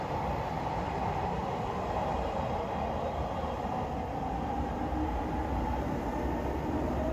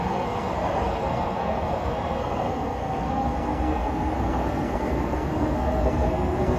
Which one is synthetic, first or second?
second